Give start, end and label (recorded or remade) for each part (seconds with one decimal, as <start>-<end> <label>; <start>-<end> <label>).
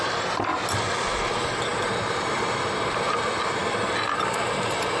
0.0-0.5 remade; 0.5-1.1 recorded; 1.1-3.6 remade; 3.6-4.3 recorded; 4.3-5.0 remade